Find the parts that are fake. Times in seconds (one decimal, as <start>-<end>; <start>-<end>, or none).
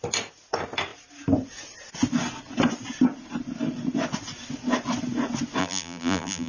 5.6-6.5